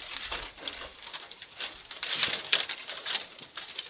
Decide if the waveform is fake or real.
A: real